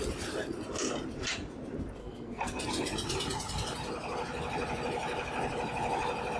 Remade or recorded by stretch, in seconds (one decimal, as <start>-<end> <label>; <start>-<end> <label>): 0.0-2.0 recorded; 2.0-2.6 remade; 2.6-6.4 recorded